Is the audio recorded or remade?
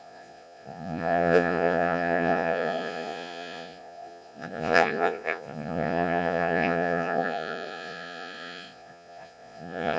remade